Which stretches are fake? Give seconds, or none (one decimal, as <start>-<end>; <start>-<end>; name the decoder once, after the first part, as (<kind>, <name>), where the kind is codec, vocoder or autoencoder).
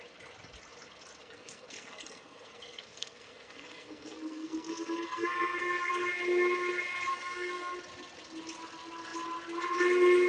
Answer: 1.2-5.9 (codec, SNAC); 7.1-7.8